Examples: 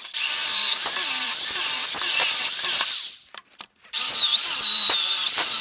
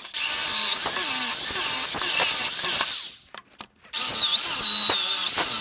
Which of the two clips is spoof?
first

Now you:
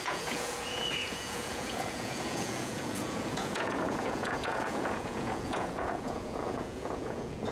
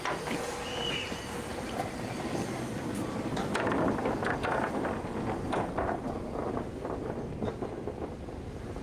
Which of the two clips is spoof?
first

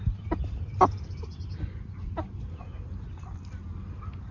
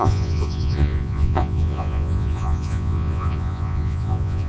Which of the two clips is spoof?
second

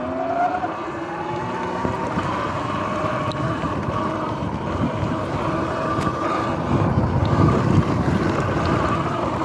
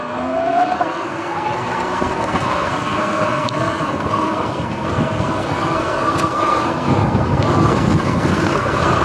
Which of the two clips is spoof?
second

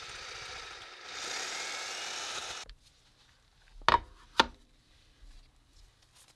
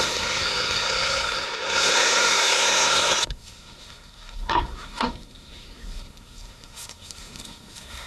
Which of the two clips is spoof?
second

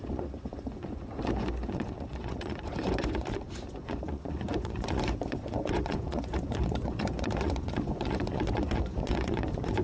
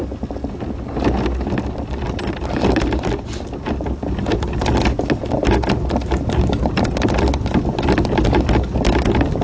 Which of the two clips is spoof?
first